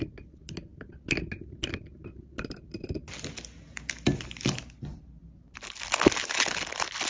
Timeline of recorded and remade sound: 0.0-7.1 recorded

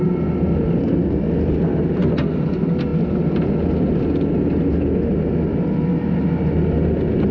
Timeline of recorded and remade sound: 0.0-0.8 recorded; 0.8-1.3 remade; 1.3-7.3 recorded

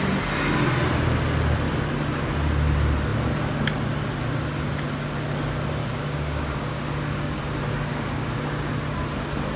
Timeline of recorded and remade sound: 0.0-5.8 recorded; 5.8-7.4 remade; 7.4-7.9 recorded; 7.9-8.7 remade; 8.7-9.6 recorded

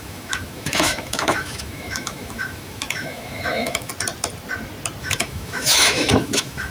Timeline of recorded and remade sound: 0.0-3.9 remade; 3.9-5.0 recorded; 5.0-6.7 remade

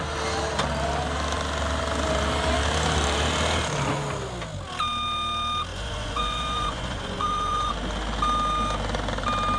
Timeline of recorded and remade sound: 0.0-5.7 recorded; 5.7-7.7 remade; 7.7-9.6 recorded

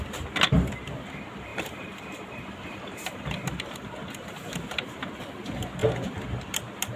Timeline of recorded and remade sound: 0.0-1.5 recorded; 1.5-5.1 remade; 5.1-7.0 recorded

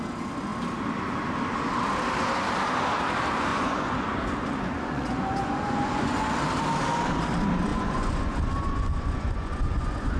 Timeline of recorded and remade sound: 0.0-3.5 recorded; 3.5-6.3 remade; 6.3-7.7 recorded; 7.7-10.2 remade

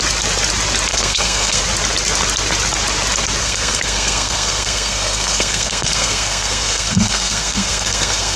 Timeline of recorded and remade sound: 0.0-0.9 recorded; 0.9-1.6 remade; 1.6-3.4 recorded; 3.4-8.4 remade